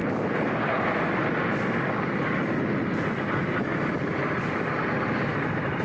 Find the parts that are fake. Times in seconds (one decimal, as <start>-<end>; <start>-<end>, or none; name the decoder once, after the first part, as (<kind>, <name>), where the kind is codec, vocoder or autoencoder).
none